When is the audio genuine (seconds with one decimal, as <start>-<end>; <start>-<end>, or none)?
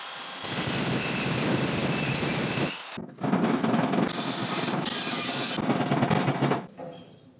0.0-7.4